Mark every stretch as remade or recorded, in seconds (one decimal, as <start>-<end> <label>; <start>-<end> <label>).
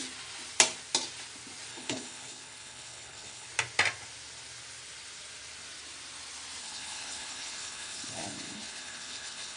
0.0-1.7 recorded; 1.7-3.5 remade; 3.5-6.6 recorded; 6.6-9.6 remade